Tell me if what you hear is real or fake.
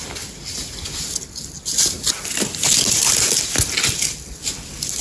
real